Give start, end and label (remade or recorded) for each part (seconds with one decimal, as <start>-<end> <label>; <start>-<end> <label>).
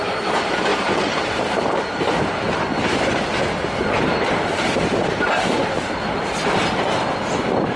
0.0-7.8 recorded